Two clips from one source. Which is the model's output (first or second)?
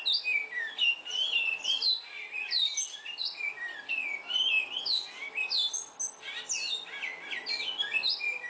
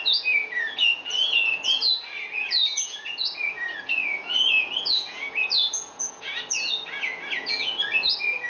second